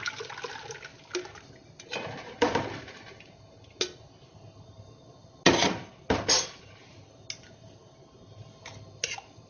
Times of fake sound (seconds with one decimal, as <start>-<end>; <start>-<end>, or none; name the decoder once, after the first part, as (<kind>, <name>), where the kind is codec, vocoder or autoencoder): none